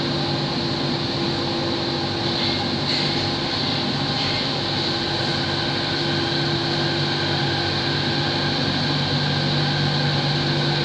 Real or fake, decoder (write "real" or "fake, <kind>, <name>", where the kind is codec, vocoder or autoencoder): real